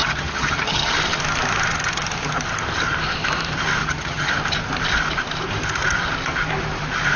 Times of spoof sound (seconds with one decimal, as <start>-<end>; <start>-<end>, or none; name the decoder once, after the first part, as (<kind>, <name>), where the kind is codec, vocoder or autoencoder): 0.0-0.9 (vocoder, HiFi-GAN); 3.8-4.3